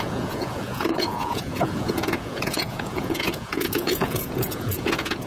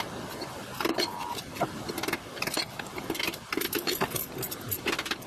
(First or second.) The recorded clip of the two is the second